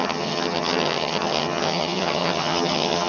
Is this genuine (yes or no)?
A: no